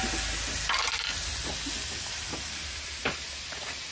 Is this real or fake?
real